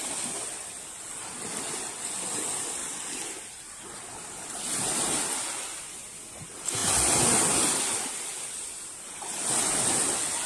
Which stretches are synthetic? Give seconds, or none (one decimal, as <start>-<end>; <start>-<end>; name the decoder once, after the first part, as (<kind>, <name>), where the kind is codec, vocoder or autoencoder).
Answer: none